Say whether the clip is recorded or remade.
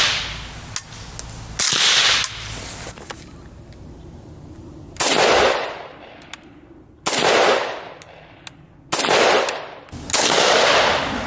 recorded